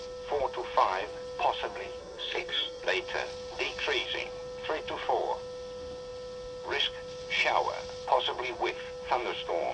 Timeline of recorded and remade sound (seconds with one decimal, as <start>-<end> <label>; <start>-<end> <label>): 0.0-2.0 recorded; 2.0-2.8 remade; 2.8-9.7 recorded